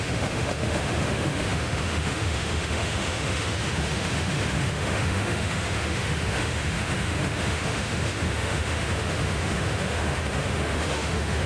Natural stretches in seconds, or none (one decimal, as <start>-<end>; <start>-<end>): none